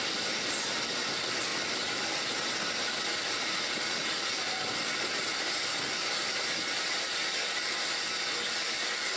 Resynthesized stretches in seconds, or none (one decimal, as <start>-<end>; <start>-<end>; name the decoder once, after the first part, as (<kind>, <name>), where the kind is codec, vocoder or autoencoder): none